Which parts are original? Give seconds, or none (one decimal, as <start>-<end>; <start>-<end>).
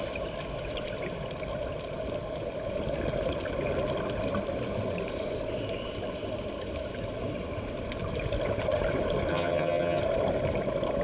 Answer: 0.0-9.3; 10.0-11.0